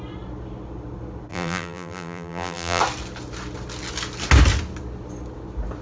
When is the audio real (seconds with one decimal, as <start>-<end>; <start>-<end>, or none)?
0.0-1.3; 2.8-5.8